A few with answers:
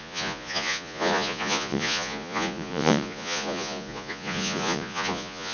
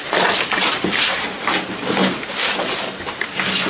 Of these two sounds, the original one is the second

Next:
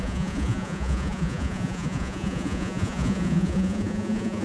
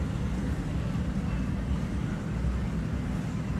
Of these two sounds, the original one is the second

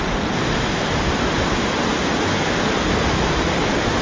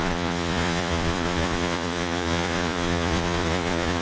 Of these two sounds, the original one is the first